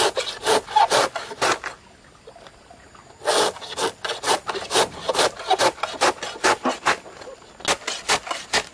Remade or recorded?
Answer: recorded